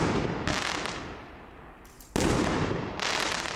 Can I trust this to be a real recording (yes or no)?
yes